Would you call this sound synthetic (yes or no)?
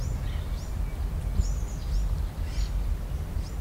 no